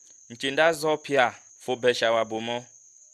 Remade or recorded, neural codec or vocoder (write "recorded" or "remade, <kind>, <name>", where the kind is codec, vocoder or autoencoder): recorded